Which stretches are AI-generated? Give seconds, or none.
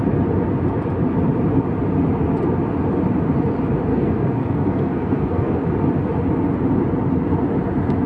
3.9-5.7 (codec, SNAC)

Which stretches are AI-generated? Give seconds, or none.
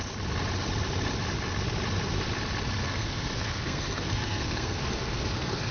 2.8-5.7 (codec, SNAC)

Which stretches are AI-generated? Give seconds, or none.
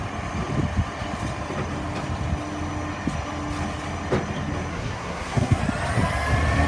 4.7-5.6 (codec, SNAC)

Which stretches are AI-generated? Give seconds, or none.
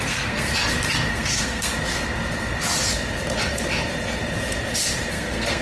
0.0-0.5 (codec, SNAC); 1.1-1.7; 5.1-5.6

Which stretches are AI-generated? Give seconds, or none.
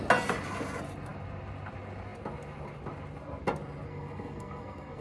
3.9-5.0 (codec, SNAC)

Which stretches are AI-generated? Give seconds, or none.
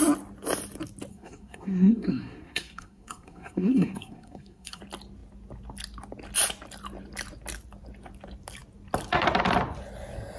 1.1-4.8 (codec, SNAC)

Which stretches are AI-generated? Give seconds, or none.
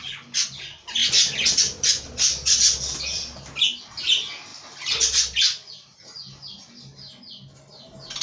none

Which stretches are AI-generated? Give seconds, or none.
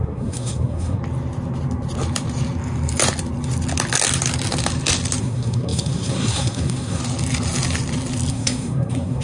0.0-1.0 (codec, SNAC); 5.2-7.0; 8.3-9.2